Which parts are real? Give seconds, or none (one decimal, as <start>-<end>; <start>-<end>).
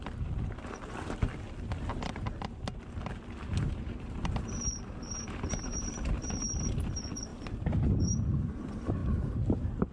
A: 0.0-3.5; 6.5-9.0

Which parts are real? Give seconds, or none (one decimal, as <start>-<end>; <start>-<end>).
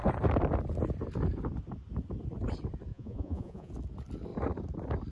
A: 0.0-2.9; 3.7-5.1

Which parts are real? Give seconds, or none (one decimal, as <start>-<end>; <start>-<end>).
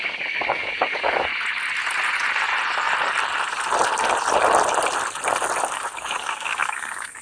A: 1.3-5.6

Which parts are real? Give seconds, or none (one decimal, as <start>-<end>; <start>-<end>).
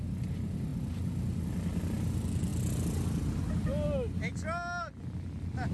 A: 0.0-5.7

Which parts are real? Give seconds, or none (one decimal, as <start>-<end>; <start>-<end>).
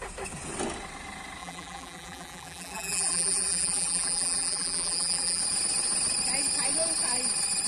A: 0.0-1.4; 5.4-7.7